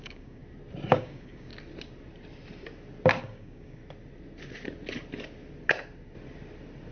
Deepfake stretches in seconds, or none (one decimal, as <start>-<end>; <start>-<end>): 0.0-0.4; 0.9-1.5; 3.2-3.8